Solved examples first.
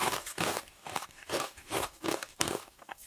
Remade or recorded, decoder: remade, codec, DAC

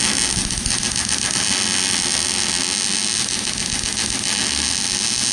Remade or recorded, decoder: recorded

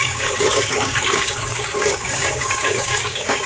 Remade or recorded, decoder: remade, codec, DAC